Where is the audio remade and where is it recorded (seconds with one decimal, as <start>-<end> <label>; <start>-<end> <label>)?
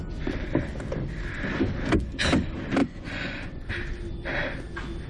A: 0.0-2.8 recorded; 2.8-3.7 remade; 3.7-5.1 recorded